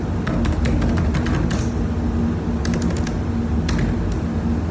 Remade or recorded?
recorded